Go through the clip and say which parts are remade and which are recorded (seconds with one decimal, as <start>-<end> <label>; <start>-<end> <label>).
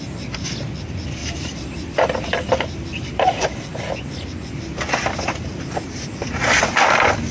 0.0-1.2 recorded; 1.2-3.8 remade; 3.8-7.3 recorded